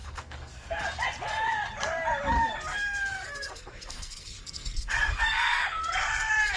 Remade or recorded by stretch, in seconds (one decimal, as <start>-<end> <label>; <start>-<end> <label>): 0.0-0.8 remade; 0.8-2.7 recorded; 2.7-6.6 remade